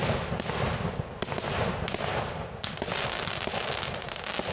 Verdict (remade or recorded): recorded